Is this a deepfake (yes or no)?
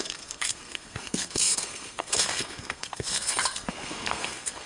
yes